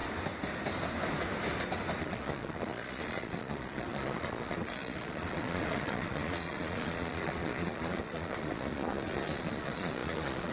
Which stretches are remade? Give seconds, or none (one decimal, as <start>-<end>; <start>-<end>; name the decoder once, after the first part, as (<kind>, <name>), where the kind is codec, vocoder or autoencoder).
2.0-10.5 (vocoder, Vocos)